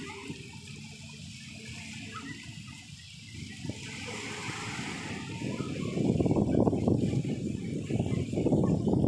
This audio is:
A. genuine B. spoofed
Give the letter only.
A